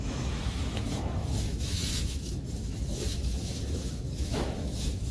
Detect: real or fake fake